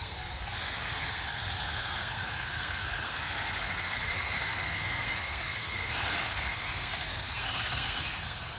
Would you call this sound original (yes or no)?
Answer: no